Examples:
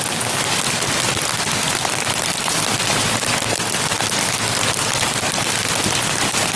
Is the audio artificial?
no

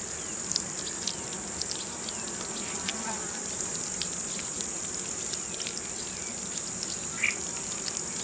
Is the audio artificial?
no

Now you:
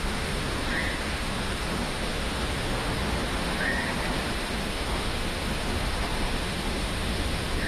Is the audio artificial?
yes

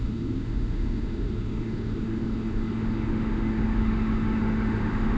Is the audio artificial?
yes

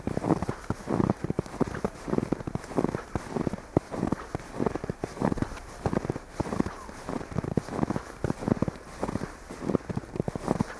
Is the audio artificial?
no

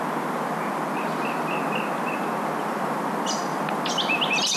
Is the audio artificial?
no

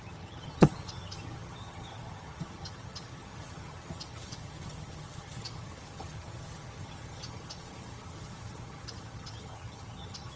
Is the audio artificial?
yes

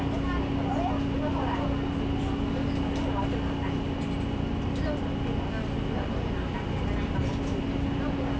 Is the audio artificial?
no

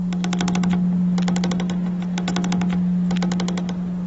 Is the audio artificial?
no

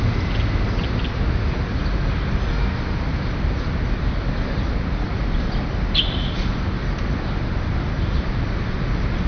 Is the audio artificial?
no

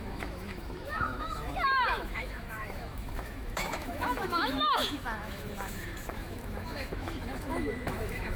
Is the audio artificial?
yes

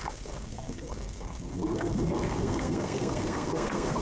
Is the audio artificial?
yes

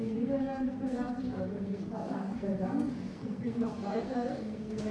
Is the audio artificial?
yes